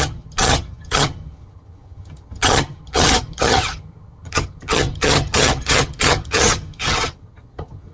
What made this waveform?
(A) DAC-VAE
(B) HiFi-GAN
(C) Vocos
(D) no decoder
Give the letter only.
B